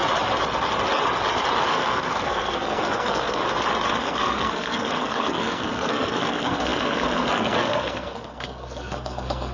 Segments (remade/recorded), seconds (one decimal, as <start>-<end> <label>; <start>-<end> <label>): 0.0-1.6 recorded; 1.6-3.4 remade; 3.4-4.0 recorded; 4.0-9.5 remade